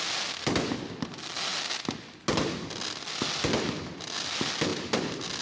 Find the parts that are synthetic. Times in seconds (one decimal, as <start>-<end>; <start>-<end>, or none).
none